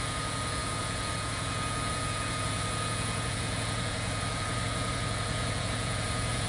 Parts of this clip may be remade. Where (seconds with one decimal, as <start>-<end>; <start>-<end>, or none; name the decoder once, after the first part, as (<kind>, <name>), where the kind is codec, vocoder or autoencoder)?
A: 0.0-6.5 (vocoder, Vocos)

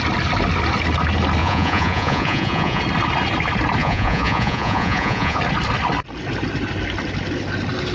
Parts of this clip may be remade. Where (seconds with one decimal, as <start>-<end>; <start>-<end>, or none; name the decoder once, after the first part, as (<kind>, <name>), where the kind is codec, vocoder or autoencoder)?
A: 1.4-2.8 (vocoder, Vocos); 3.8-5.4

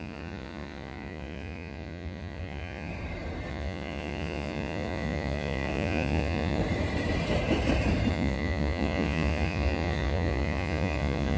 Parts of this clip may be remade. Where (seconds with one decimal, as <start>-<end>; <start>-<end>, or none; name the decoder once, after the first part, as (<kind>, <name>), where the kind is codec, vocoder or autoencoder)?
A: 0.0-2.9 (vocoder, Vocos); 3.5-6.6; 8.1-11.4

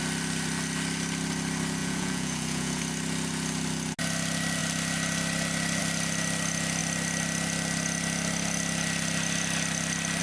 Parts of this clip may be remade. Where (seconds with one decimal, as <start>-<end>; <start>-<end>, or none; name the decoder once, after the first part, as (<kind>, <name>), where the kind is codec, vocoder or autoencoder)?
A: 1.8-2.8 (vocoder, Vocos)

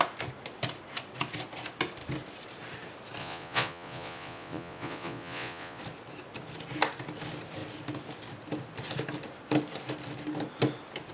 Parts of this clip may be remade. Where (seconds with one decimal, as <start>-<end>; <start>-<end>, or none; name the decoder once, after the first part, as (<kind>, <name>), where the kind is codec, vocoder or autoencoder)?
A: 3.2-5.8 (vocoder, Vocos)

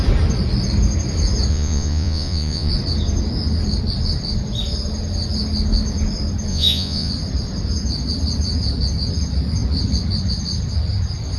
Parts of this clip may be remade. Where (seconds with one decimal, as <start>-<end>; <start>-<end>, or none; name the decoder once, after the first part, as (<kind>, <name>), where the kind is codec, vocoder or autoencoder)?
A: 1.5-2.7 (vocoder, Vocos); 6.5-7.1